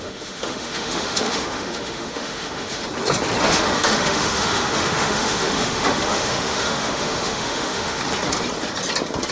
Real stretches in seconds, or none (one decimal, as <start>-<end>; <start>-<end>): 2.8-3.4; 8.0-9.3